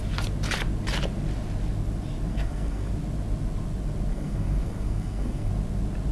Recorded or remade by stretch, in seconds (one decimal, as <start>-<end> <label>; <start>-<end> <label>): 0.0-2.3 recorded; 2.3-2.9 remade; 2.9-4.1 recorded; 4.1-5.5 remade; 5.5-6.1 recorded